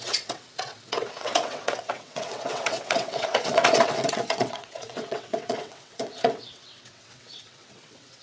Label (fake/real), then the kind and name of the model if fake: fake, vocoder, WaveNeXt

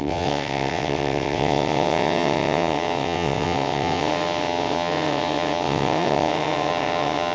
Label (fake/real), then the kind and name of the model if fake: fake, vocoder, WaveNeXt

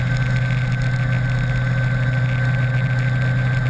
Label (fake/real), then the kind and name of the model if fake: real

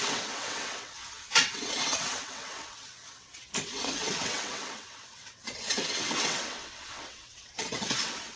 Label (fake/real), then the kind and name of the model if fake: fake, vocoder, WaveNeXt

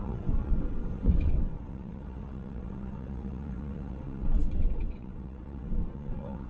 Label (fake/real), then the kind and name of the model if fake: fake, vocoder, WaveNeXt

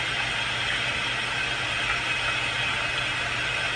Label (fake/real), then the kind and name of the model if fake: real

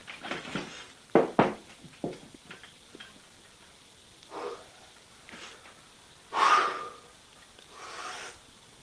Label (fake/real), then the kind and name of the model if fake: real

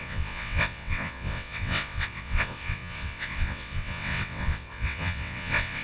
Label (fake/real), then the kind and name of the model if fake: fake, vocoder, WaveNeXt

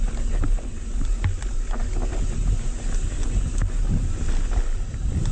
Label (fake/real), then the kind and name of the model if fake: real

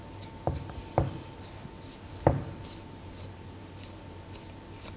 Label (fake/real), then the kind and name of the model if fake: real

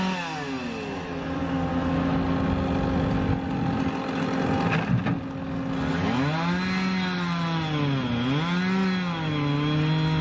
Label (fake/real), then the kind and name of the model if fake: real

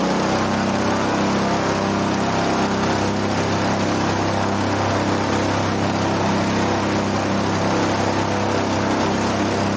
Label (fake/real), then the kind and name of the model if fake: real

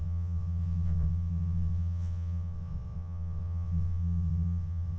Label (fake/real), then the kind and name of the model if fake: fake, vocoder, WaveNeXt